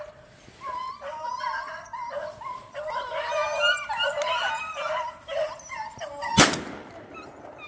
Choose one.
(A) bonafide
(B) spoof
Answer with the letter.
A